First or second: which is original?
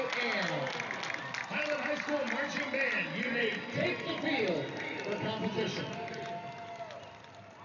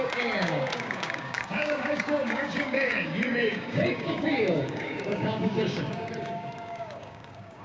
first